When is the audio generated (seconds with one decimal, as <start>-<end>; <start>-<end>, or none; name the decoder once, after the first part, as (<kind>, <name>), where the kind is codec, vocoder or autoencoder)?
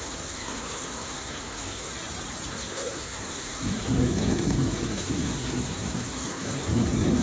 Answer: 0.0-1.9 (codec, SNAC); 2.5-7.2